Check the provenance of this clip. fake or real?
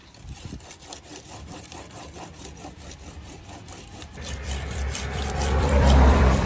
fake